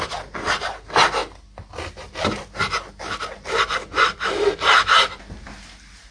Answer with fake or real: real